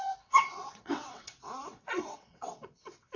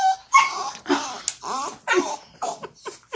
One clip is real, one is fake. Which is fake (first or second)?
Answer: first